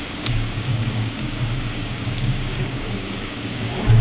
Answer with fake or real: fake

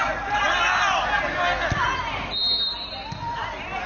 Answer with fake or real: real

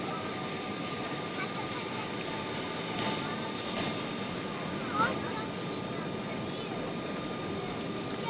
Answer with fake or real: real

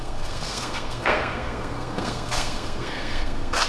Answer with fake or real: fake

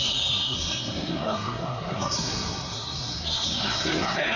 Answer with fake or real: fake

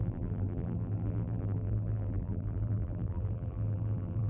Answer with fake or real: fake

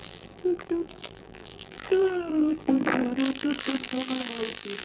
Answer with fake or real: fake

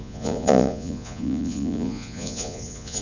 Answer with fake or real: fake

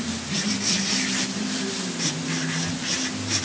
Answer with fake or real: real